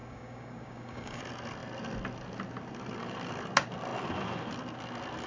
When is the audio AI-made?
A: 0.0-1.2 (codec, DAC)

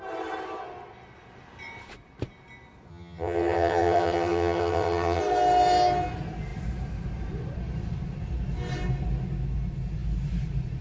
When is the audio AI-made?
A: 2.9-5.2 (vocoder, HiFi-GAN)

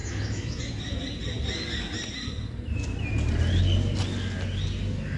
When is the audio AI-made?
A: 0.0-0.6 (autoencoder, DAC-VAE)

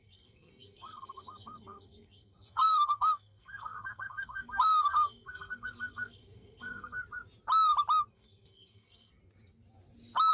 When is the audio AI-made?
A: 0.0-7.0 (codec, SNAC); 8.1-9.1